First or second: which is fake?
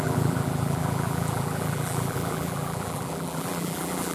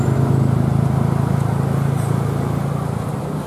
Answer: first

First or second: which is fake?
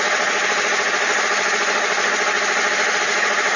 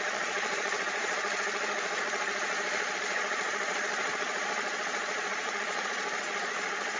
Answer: second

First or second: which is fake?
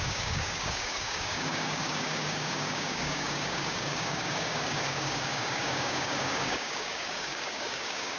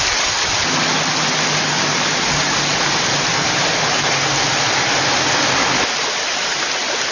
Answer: first